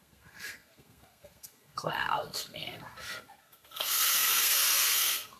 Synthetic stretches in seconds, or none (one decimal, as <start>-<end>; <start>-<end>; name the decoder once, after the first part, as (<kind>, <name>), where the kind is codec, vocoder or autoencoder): 0.0-5.4 (codec, SNAC)